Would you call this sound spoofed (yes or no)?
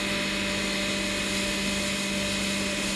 no